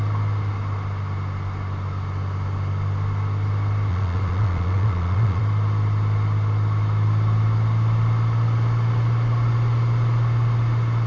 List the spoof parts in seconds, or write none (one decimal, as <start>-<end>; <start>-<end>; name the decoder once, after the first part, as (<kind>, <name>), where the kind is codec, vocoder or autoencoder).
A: 3.9-5.4 (vocoder, Vocos)